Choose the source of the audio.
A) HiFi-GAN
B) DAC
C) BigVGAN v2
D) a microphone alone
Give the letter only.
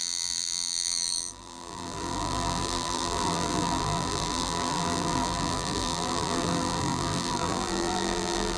C